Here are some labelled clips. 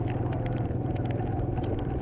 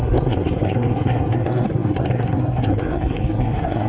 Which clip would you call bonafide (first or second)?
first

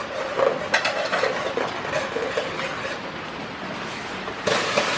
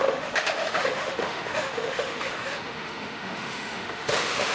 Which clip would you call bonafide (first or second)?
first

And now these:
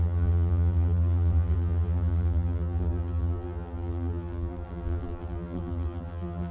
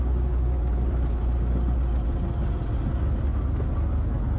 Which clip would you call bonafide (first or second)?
second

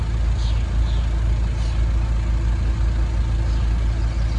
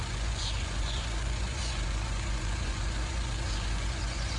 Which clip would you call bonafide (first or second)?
first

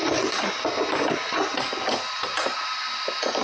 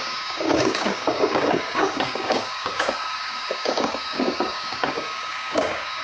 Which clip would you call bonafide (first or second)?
first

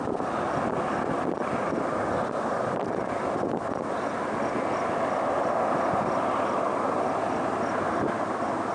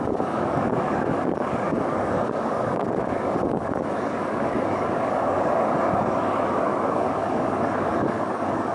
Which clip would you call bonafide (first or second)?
first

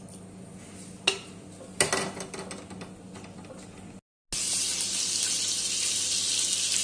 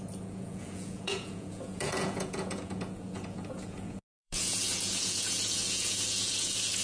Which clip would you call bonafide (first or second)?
first